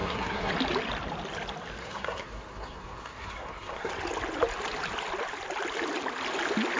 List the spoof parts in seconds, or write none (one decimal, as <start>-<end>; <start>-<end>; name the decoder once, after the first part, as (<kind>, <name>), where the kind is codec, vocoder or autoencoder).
0.0-0.5 (codec, SNAC); 1.8-3.9